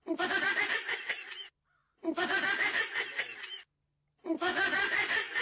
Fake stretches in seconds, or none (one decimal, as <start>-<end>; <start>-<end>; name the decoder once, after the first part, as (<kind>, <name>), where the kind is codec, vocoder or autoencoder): none